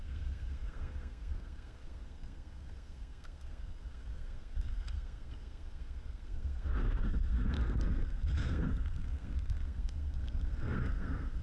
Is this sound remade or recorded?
remade